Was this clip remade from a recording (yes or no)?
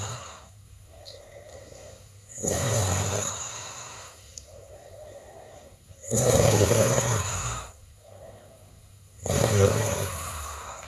yes